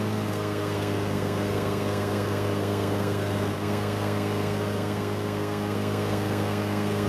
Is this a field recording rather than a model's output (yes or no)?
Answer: no